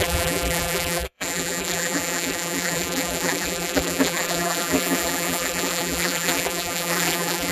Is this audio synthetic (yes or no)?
yes